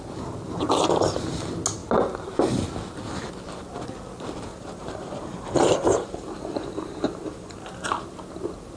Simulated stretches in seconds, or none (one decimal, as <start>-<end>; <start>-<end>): 4.5-7.7